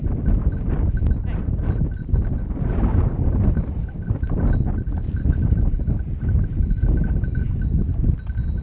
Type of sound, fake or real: real